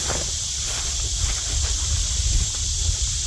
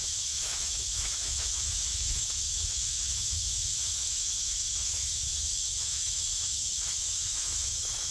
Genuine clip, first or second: first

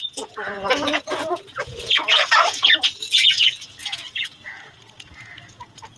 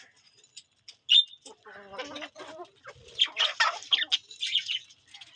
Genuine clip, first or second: second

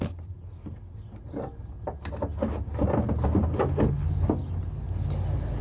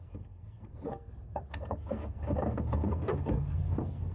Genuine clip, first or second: first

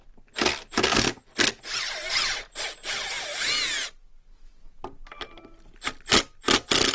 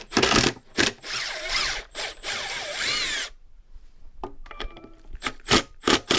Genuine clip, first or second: first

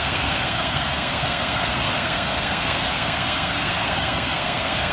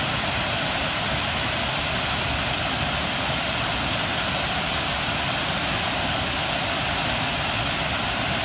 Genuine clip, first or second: second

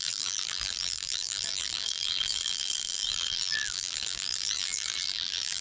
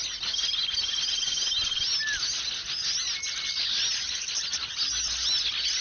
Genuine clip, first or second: second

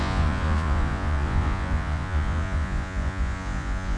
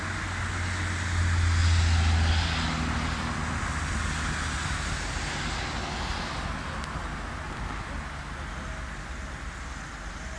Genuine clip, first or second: second